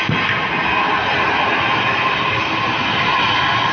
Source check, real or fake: real